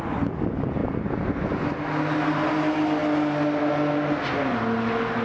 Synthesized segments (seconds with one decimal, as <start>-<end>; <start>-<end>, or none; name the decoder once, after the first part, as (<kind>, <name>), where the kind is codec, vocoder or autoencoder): none